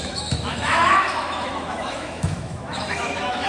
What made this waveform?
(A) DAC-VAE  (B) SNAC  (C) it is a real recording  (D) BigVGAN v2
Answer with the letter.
A